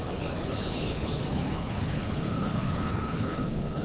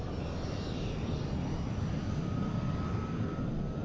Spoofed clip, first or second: first